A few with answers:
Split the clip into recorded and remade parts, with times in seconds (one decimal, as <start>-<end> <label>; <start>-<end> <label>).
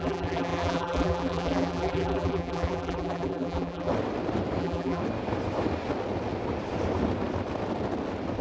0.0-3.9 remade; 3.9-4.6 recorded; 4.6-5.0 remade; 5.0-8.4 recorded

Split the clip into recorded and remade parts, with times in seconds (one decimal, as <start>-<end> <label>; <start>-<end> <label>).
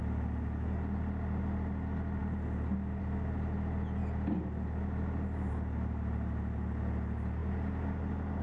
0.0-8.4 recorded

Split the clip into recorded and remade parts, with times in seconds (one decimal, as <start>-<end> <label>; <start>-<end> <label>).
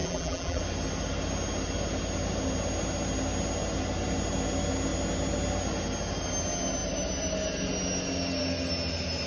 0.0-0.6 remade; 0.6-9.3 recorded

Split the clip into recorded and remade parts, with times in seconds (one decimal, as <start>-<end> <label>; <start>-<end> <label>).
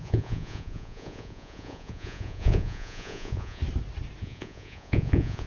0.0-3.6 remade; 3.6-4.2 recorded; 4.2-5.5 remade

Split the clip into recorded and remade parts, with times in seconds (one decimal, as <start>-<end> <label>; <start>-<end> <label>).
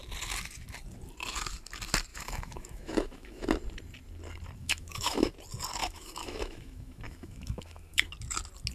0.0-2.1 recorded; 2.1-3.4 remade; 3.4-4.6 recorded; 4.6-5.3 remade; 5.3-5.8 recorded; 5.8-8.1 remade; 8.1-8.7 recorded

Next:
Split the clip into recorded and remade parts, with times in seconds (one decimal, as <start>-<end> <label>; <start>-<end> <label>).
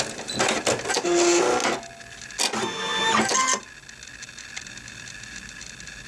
0.0-6.1 recorded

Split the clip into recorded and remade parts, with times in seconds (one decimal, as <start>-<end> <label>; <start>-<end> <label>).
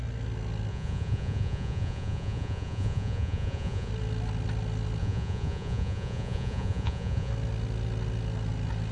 0.0-0.7 recorded; 0.7-3.9 remade; 3.9-5.0 recorded; 5.0-7.3 remade; 7.3-8.9 recorded